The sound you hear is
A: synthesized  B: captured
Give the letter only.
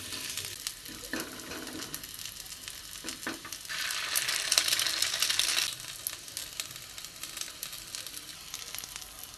B